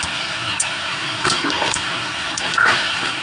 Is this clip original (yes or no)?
no